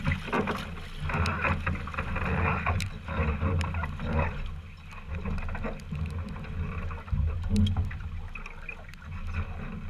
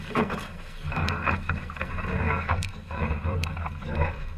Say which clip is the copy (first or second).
second